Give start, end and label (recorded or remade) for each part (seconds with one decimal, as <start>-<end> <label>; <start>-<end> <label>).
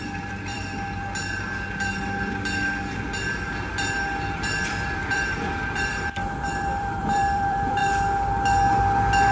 0.0-0.6 remade; 0.6-3.7 recorded; 3.7-7.8 remade; 7.8-9.3 recorded